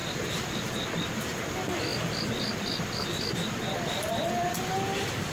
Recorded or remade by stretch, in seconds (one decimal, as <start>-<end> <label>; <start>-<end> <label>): 0.0-5.3 recorded